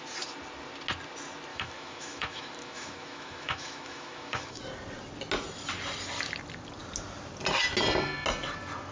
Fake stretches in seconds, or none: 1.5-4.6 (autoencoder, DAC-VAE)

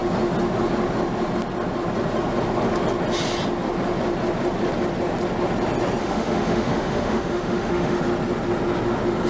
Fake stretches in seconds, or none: 6.0-8.0 (autoencoder, DAC-VAE)

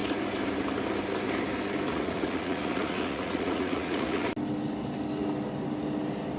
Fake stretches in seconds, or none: 1.9-4.3 (vocoder, Vocos)

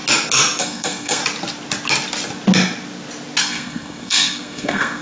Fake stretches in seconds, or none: 0.6-1.2 (codec, SNAC); 3.4-5.0

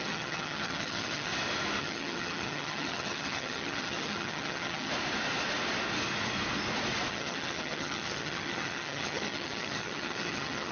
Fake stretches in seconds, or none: 0.0-1.3 (vocoder, HiFi-GAN); 1.8-4.9; 7.1-10.7

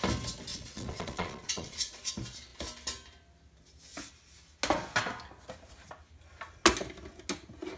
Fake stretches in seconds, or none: 0.5-2.1 (vocoder, Vocos)

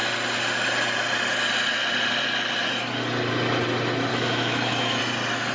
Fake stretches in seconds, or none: 4.1-5.0 (autoencoder, DAC-VAE)